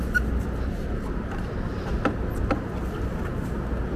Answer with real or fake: real